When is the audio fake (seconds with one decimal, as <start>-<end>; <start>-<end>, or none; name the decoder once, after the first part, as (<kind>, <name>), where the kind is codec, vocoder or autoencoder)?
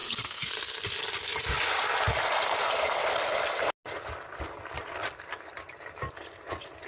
0.0-0.5 (codec, SNAC)